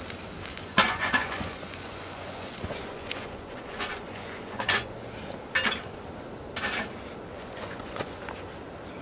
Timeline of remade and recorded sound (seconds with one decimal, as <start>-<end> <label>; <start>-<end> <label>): 0.0-0.5 recorded; 0.5-4.9 remade; 4.9-7.3 recorded; 7.3-8.2 remade; 8.2-9.0 recorded